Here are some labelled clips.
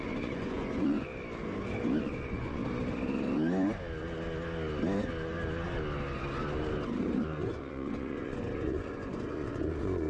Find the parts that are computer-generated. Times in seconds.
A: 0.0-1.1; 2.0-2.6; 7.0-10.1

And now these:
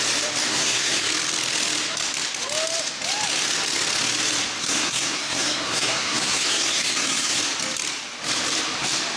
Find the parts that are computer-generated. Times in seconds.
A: 0.5-1.1; 4.6-7.4

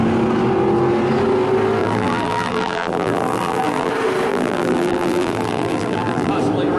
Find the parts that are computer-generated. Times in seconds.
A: 1.8-3.9; 4.3-6.3

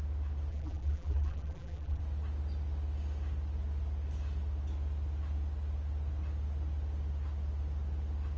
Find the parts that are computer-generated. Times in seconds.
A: 0.5-2.0

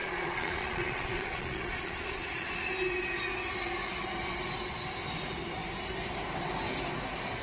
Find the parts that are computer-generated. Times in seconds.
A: 0.0-2.7